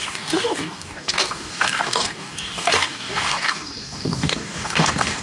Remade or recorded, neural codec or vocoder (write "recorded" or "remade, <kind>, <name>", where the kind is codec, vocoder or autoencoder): remade, codec, DAC